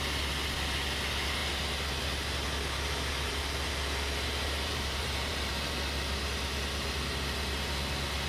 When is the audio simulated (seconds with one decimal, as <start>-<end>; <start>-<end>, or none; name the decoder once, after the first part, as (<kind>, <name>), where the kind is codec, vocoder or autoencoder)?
4.3-5.5 (vocoder, BigVGAN v2)